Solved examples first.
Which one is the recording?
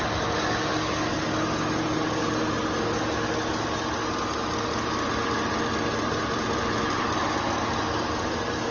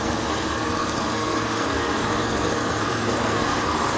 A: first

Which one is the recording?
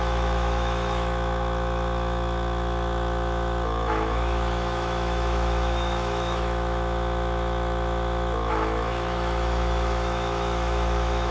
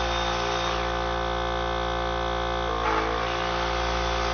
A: second